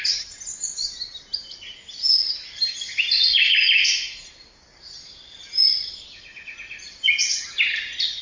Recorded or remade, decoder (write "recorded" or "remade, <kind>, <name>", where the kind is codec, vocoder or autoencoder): recorded